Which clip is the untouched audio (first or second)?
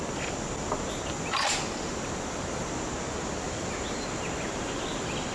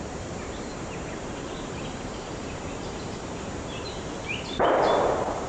first